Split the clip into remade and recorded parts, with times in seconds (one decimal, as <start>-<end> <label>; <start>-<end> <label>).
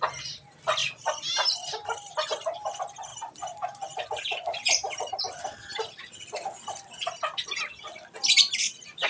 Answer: 0.0-3.1 recorded; 3.1-5.2 remade; 5.2-9.1 recorded